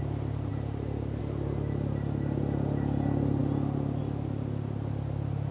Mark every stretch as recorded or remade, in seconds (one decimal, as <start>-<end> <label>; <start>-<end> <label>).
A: 0.0-5.5 recorded